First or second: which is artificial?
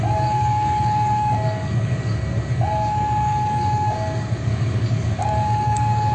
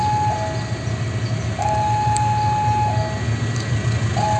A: first